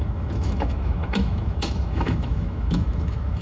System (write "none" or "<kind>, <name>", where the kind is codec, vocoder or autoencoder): autoencoder, DAC-VAE